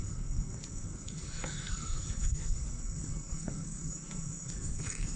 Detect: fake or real fake